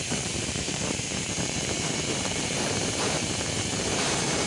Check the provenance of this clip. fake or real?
fake